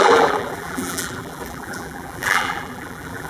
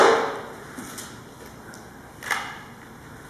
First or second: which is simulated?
first